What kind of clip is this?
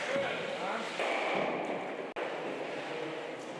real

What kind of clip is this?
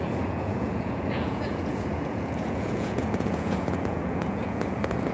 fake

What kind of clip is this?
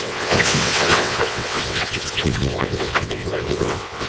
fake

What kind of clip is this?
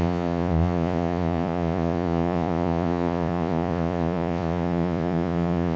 fake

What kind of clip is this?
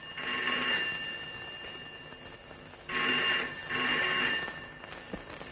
real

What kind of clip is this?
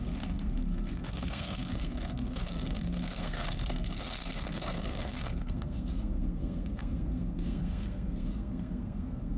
fake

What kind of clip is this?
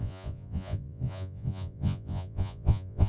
fake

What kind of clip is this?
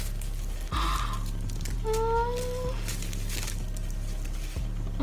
real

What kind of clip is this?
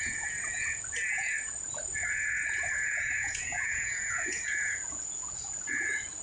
fake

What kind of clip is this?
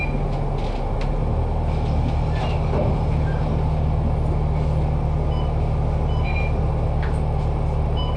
real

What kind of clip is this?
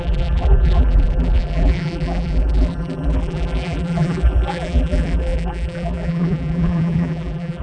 fake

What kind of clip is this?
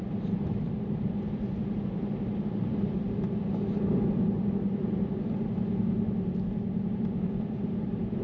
fake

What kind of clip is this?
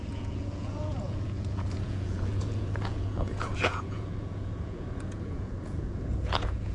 fake